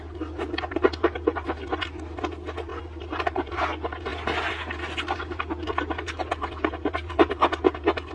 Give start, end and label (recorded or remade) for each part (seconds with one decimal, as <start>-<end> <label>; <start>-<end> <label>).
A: 0.0-2.7 recorded; 2.7-3.6 remade; 3.6-8.1 recorded